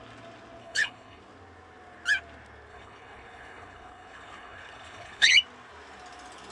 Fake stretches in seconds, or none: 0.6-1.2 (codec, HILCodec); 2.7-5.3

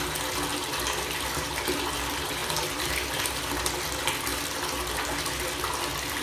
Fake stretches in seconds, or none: 2.4-2.9 (vocoder, BigVGAN v2)

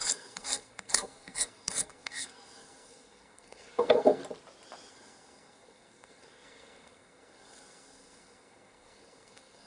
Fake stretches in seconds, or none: 0.0-4.2 (codec, SNAC); 4.9-9.7

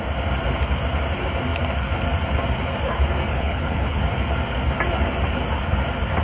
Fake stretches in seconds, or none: 3.3-4.0 (codec, HILCodec)

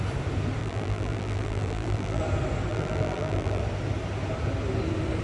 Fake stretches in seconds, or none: 0.6-2.2 (vocoder, BigVGAN v2); 2.7-3.6

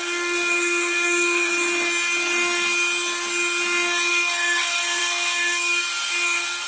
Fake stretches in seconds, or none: 0.0-1.5 (codec, SNAC); 4.1-6.7